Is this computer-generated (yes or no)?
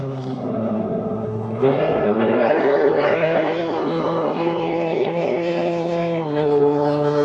yes